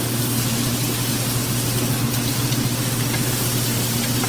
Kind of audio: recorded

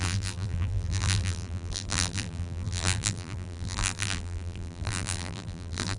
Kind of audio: remade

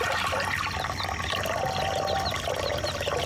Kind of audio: recorded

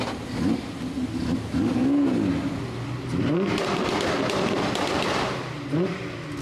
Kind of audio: recorded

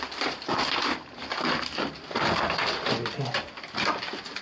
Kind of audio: recorded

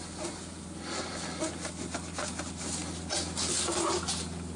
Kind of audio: recorded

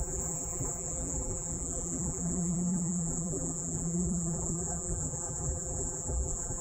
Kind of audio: remade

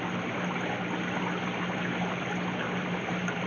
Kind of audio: recorded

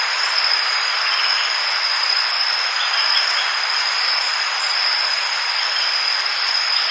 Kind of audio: remade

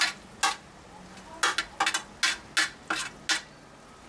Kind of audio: recorded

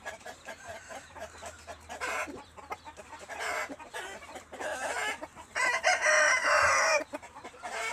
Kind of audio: remade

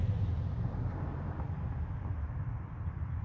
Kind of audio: remade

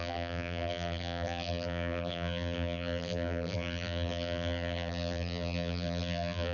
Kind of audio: remade